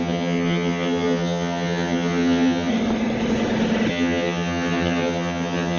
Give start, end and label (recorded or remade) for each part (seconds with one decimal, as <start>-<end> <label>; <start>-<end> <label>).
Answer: 0.0-2.7 remade; 2.7-3.9 recorded; 3.9-5.8 remade